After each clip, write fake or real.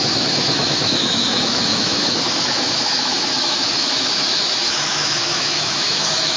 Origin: fake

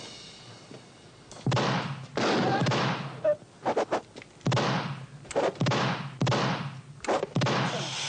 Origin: real